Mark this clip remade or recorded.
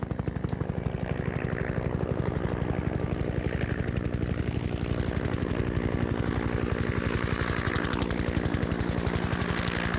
recorded